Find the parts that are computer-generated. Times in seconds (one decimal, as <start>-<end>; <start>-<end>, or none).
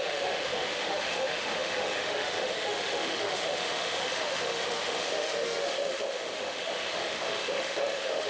0.0-8.3